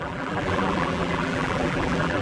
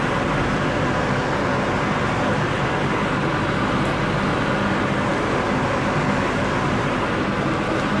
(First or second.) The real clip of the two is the second